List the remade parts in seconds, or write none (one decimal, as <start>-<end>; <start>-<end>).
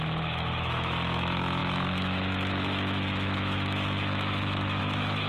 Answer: 0.0-5.3